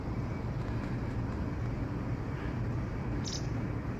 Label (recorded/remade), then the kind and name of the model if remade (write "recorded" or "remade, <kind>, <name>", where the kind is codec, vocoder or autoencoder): recorded